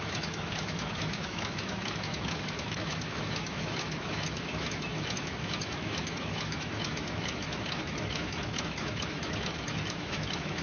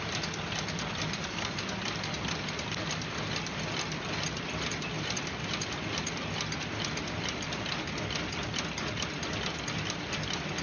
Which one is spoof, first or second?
first